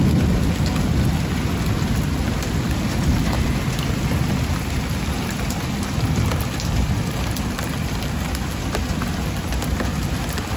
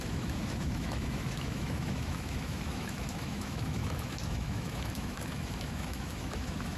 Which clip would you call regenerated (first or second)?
second